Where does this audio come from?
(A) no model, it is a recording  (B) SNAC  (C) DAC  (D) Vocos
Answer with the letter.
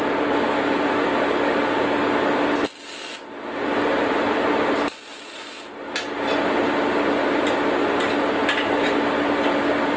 A